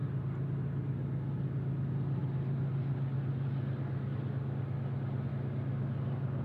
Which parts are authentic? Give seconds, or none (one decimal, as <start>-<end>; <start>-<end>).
0.0-6.4